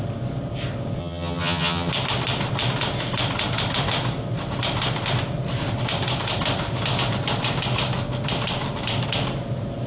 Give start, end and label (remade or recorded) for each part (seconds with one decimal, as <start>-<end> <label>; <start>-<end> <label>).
0.0-1.0 recorded; 1.0-1.9 remade; 1.9-9.9 recorded